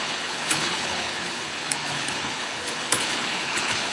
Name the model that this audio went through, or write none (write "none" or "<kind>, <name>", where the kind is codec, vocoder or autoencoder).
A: codec, HILCodec